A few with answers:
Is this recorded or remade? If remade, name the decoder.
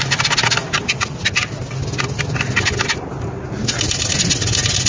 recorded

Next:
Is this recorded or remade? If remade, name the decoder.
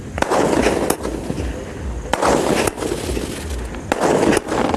recorded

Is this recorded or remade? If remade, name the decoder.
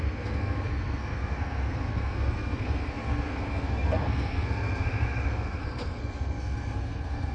remade, codec, SNAC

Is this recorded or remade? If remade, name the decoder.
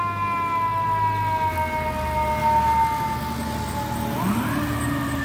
recorded